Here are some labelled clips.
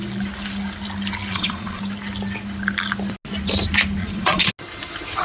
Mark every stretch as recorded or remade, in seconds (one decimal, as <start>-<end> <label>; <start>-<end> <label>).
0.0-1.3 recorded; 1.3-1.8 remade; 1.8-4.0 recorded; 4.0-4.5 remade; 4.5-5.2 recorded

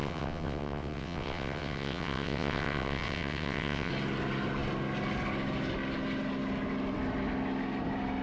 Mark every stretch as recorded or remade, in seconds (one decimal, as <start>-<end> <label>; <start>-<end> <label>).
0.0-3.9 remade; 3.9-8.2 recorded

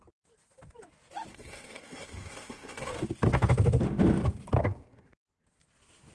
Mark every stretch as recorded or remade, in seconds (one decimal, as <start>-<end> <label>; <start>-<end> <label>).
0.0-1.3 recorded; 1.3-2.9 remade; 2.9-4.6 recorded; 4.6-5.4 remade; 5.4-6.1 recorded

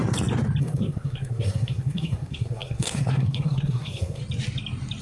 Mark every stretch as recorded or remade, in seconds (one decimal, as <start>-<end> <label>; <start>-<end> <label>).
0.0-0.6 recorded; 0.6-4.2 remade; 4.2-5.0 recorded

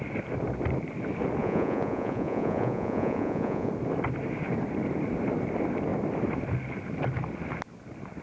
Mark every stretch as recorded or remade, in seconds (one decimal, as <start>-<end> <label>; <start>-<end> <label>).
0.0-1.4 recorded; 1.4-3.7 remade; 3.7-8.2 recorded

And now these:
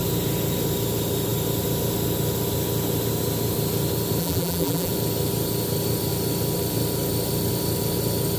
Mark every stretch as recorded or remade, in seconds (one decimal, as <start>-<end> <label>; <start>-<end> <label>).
0.0-4.2 recorded; 4.2-4.9 remade; 4.9-8.4 recorded

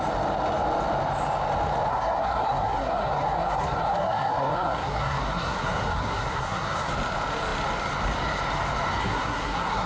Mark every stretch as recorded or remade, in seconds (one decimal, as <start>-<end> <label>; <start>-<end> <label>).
0.0-1.9 recorded; 1.9-6.9 remade; 6.9-9.0 recorded; 9.0-9.9 remade

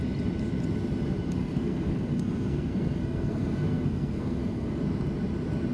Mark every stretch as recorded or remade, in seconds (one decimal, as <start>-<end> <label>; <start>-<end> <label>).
0.0-1.4 recorded; 1.4-4.8 remade; 4.8-5.7 recorded